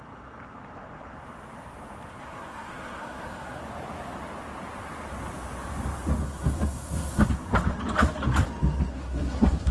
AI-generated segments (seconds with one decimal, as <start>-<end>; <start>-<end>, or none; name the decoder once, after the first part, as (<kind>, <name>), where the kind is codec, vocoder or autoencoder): 2.1-3.6 (codec, SNAC); 6.2-7.3; 8.9-9.7